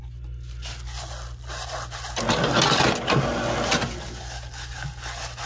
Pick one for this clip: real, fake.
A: real